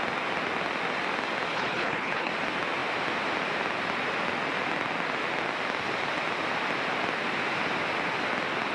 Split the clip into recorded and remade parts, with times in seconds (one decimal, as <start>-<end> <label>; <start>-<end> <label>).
0.0-1.5 recorded; 1.5-2.3 remade; 2.3-8.7 recorded